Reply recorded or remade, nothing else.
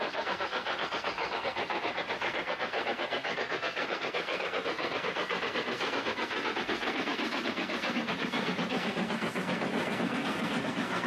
remade